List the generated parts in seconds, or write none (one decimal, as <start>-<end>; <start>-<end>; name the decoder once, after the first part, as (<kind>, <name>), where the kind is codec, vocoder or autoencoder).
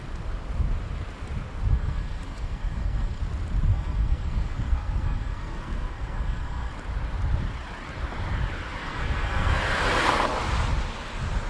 1.7-3.2 (codec, SNAC); 3.7-6.7; 8.8-9.6